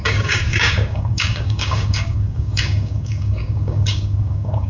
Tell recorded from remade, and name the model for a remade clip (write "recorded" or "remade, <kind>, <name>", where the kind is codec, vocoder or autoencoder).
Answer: remade, codec, DAC